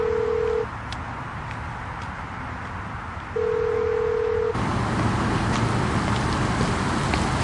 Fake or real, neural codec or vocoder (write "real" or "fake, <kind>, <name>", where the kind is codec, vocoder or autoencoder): real